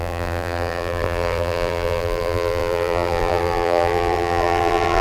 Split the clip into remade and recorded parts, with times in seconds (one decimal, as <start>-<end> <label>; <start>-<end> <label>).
0.0-5.0 remade